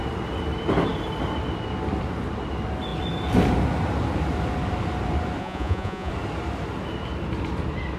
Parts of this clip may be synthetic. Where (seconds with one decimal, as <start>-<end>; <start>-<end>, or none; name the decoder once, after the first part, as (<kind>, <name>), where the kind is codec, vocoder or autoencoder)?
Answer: 5.4-6.1 (vocoder, Vocos)